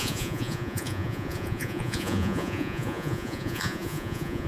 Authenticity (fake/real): fake